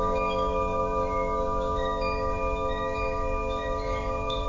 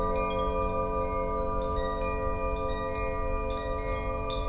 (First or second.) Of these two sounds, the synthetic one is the first